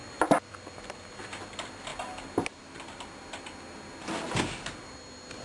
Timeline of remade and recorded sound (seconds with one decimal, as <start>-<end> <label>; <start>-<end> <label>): 0.0-5.4 recorded